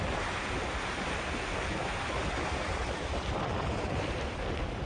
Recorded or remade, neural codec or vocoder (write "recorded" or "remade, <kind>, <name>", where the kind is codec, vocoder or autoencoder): recorded